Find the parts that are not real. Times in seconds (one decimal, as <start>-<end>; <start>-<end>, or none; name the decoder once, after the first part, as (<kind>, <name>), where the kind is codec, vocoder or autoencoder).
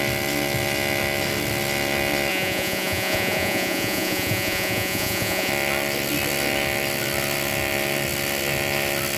2.3-5.5 (vocoder, Vocos)